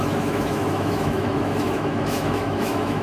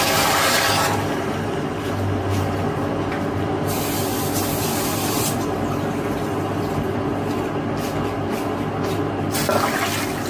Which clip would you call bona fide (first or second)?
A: second